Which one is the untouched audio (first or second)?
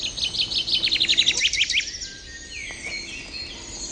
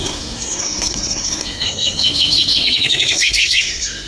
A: first